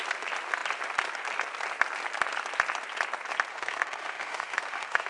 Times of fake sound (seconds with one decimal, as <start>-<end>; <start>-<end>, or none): 3.5-5.1